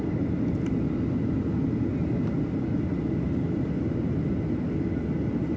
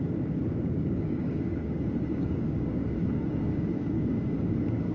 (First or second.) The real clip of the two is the first